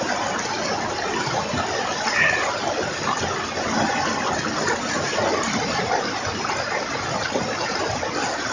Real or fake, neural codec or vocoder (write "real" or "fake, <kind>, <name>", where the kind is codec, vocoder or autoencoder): real